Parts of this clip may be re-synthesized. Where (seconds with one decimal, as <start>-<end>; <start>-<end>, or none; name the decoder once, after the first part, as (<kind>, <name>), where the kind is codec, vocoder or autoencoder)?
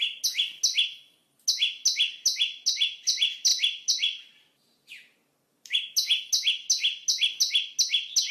none